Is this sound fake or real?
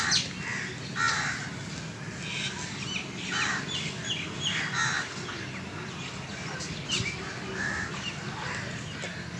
real